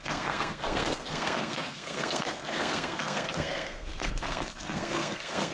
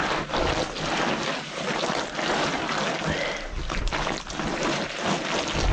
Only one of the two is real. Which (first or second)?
second